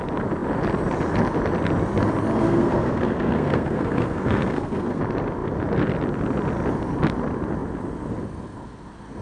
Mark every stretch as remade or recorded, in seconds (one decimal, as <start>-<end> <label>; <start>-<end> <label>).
0.0-2.4 recorded; 2.4-5.0 remade; 5.0-9.2 recorded